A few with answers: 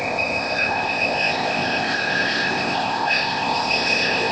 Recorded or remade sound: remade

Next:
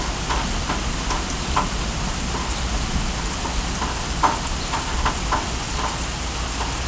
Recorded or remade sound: recorded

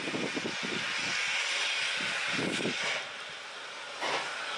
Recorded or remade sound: recorded